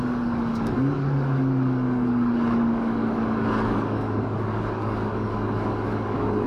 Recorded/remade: remade